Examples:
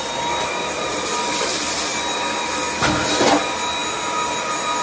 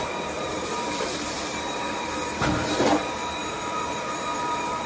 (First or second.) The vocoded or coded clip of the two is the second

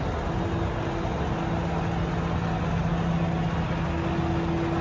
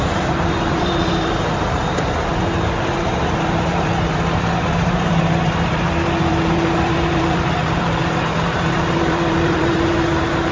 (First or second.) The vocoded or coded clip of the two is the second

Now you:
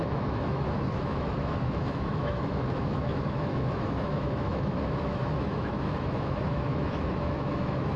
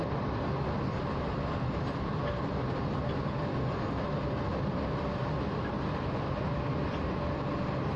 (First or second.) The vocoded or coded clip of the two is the first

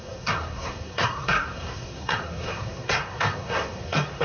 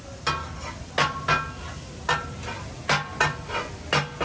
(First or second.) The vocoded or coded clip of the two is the first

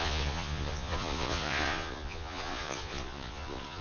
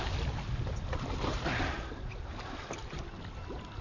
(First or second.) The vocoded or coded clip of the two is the first